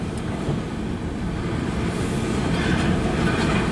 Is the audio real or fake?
real